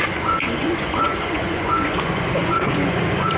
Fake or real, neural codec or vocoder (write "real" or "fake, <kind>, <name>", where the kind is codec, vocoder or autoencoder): fake, vocoder, Vocos